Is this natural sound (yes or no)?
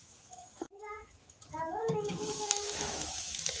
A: no